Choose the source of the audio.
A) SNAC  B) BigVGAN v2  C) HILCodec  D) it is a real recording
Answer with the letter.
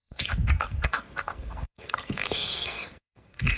A